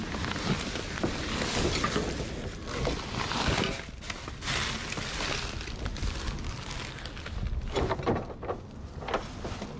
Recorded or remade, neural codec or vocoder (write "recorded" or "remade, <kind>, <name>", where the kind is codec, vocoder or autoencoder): recorded